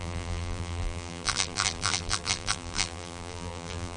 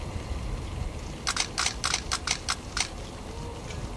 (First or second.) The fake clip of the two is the first